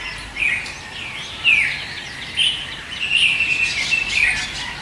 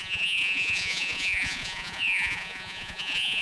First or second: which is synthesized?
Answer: second